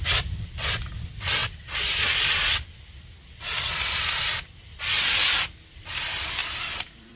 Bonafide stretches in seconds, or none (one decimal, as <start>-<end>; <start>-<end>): 1.4-5.7

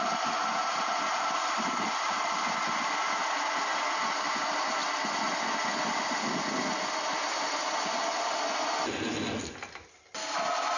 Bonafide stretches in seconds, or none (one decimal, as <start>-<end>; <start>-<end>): 0.0-10.8

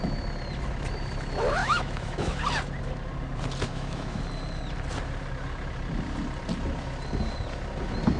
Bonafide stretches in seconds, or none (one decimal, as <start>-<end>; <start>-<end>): 0.0-1.6; 2.4-3.7; 4.2-8.2

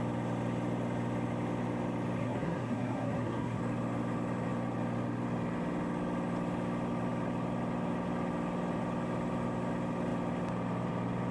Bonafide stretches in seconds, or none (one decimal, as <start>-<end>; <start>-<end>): 0.0-2.2; 3.6-11.3

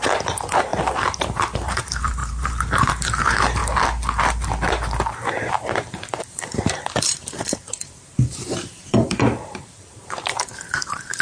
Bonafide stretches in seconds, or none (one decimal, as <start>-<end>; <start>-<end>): 0.7-1.2; 3.6-5.5

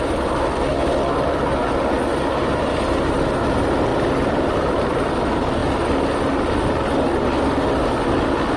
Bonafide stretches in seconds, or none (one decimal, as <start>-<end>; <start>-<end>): 0.0-8.6

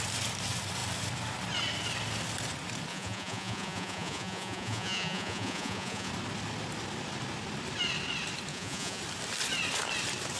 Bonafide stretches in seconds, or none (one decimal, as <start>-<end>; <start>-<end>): 0.0-2.9; 6.1-8.5; 9.0-10.4

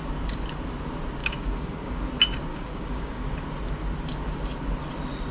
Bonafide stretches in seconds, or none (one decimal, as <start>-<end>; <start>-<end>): 0.0-1.2; 2.1-2.5; 3.4-5.3